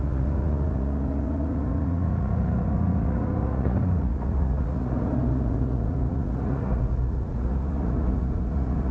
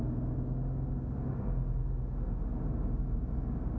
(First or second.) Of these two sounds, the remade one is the first